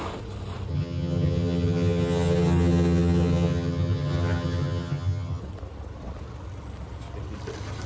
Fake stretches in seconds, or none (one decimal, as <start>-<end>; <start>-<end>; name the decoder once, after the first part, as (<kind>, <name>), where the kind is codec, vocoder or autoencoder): 0.7-5.4 (vocoder, HiFi-GAN)